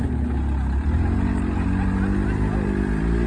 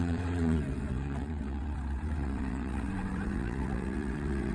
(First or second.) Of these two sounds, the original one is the first